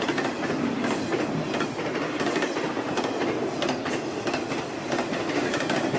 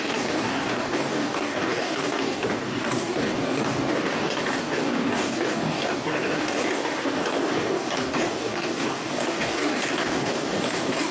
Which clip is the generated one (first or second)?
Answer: second